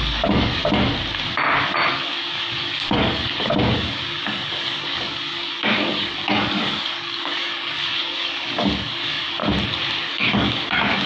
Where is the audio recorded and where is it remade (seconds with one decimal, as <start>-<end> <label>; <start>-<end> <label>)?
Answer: 0.0-0.6 remade; 0.6-1.9 recorded; 1.9-9.4 remade; 9.4-10.0 recorded; 10.0-11.1 remade